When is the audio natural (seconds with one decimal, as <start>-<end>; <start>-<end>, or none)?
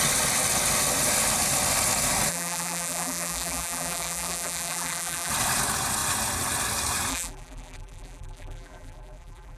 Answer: 0.0-2.3; 5.3-7.1